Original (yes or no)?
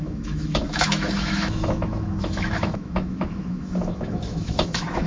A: no